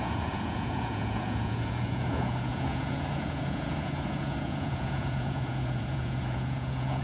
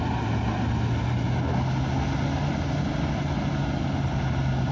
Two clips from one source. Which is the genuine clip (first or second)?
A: second